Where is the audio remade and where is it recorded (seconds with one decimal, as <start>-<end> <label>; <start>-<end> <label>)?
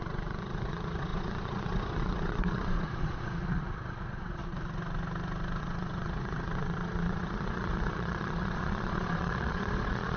0.0-4.4 remade; 4.4-5.6 recorded; 5.6-10.2 remade